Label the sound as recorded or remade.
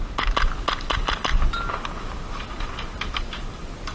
recorded